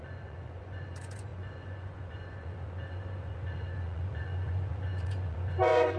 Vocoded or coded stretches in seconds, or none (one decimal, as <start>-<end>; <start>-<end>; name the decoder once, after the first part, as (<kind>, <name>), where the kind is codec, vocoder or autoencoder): 0.0-6.0 (vocoder, Vocos)